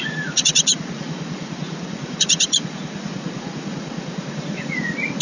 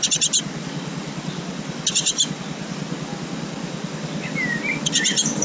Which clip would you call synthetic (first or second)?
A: first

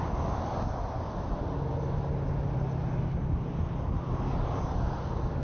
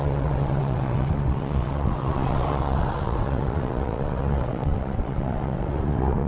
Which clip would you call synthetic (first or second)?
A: second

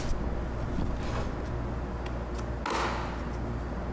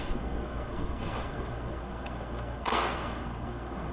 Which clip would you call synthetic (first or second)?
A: second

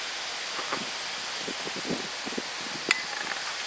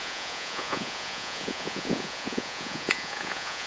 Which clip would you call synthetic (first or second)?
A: second